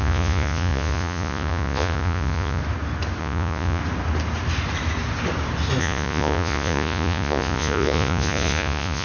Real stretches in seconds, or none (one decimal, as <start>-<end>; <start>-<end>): 2.6-3.2; 3.8-5.8